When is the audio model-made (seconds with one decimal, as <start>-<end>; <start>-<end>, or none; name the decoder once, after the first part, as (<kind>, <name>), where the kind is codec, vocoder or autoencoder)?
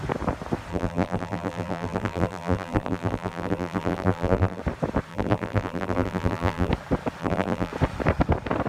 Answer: 0.7-4.6 (vocoder, BigVGAN v2); 5.1-6.7; 7.2-7.7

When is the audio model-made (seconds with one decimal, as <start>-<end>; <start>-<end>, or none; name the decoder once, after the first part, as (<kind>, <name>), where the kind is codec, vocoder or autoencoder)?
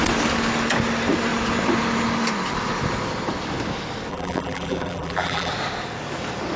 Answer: 4.1-5.5 (vocoder, BigVGAN v2)